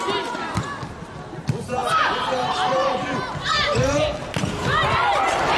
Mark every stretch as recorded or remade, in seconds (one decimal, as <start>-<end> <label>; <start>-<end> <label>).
0.0-1.8 recorded; 1.8-2.9 remade; 2.9-5.6 recorded